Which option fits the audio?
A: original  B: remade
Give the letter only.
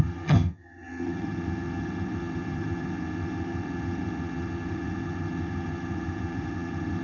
B